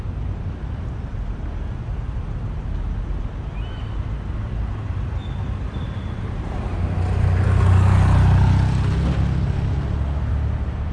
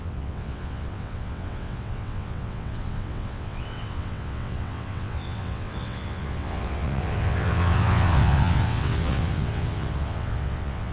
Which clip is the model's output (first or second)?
second